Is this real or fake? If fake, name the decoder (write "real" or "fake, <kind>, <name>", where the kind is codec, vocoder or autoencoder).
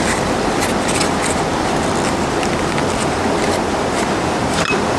fake, vocoder, BigVGAN v2